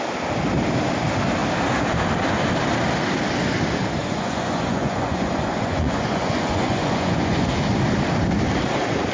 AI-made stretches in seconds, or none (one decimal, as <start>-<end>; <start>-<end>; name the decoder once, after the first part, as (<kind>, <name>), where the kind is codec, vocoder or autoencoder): 4.0-7.5 (vocoder, Vocos)